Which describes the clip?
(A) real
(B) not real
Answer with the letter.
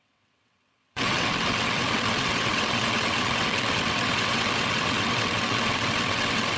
B